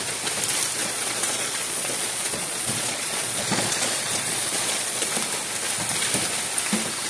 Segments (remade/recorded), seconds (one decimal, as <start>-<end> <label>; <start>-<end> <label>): 0.0-0.8 recorded; 0.8-5.1 remade; 5.1-7.1 recorded

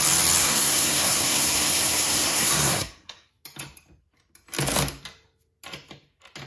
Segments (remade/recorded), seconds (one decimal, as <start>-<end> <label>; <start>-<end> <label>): 0.0-0.4 recorded; 0.4-3.3 remade; 3.3-6.5 recorded

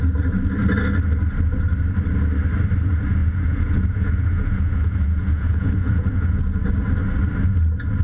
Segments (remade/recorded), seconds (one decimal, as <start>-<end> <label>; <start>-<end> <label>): 0.0-3.2 recorded; 3.2-6.4 remade; 6.4-8.0 recorded

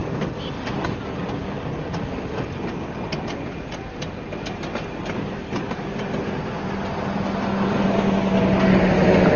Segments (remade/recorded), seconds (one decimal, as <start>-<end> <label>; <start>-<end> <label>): 0.0-9.4 recorded

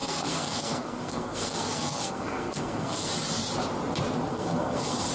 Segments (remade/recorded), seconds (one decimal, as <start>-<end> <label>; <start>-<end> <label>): 0.0-3.1 remade; 3.1-4.3 recorded; 4.3-5.1 remade

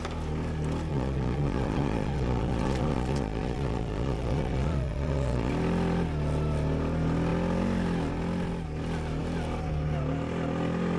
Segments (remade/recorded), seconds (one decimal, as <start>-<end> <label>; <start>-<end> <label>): 0.0-0.9 recorded; 0.9-5.5 remade; 5.5-11.0 recorded

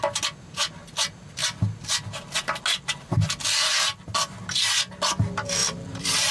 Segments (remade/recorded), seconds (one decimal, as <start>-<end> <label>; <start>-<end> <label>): 0.0-5.6 recorded; 5.6-6.3 remade

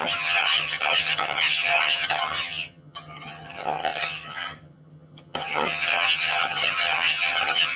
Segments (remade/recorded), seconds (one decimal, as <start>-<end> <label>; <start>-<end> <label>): 0.0-7.8 remade